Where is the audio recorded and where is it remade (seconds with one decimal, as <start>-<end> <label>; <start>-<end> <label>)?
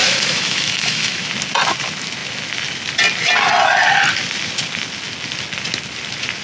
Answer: 0.0-1.3 remade; 1.3-6.4 recorded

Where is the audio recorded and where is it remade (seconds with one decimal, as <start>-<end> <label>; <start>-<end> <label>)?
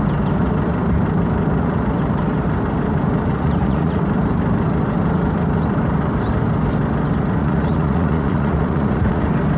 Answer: 0.0-3.3 recorded; 3.3-4.0 remade; 4.0-7.4 recorded; 7.4-9.2 remade; 9.2-9.6 recorded